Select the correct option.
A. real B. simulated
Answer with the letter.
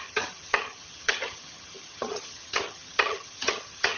B